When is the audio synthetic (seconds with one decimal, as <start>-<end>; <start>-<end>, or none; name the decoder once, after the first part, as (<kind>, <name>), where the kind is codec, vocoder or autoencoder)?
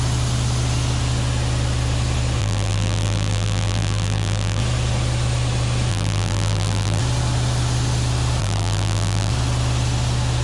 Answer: 2.4-4.6 (vocoder, BigVGAN v2); 5.9-7.0; 8.4-9.3